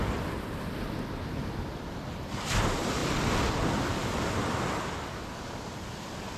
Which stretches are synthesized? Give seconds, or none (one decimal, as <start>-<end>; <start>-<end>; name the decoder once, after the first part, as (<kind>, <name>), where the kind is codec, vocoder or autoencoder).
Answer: none